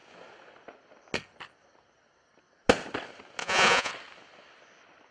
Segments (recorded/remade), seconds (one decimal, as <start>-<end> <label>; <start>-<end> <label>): 0.0-3.4 recorded; 3.4-3.9 remade; 3.9-5.1 recorded